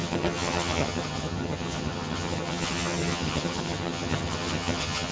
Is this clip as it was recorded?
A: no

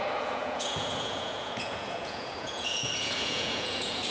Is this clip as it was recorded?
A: no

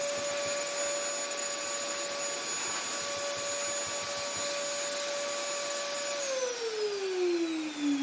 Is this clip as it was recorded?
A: yes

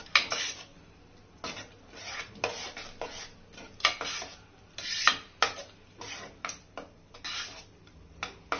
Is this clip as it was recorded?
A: yes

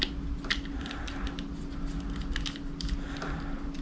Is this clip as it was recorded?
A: yes